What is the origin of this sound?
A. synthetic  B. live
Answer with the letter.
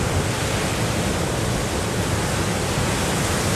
B